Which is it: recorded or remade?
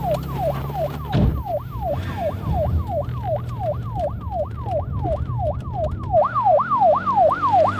remade